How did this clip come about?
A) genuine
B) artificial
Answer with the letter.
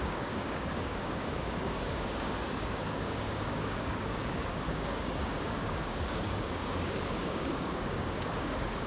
B